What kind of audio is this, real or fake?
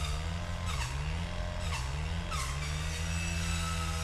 real